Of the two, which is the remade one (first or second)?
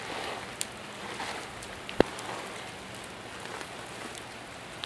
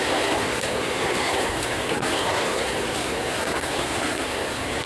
second